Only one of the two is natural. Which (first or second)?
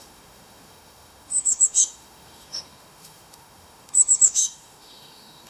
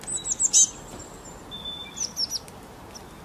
second